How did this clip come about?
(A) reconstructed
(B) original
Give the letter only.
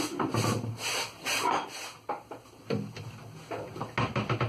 B